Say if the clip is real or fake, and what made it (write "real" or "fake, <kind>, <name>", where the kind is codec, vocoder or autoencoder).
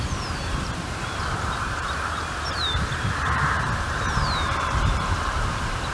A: fake, vocoder, BigVGAN v2